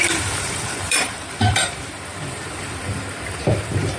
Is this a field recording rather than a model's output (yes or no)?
no